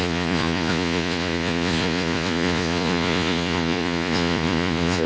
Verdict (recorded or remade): remade